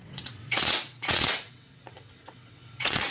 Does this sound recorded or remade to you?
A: remade